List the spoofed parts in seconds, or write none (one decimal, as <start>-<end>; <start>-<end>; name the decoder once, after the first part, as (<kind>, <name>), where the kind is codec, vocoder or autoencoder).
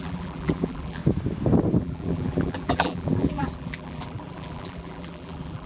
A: 0.0-1.0 (vocoder, BigVGAN v2); 1.8-5.7